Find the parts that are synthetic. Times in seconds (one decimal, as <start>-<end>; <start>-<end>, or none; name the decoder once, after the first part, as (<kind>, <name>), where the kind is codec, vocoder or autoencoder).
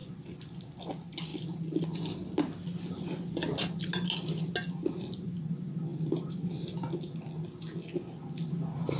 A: 5.9-6.7 (vocoder, BigVGAN v2)